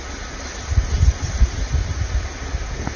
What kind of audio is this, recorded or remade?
recorded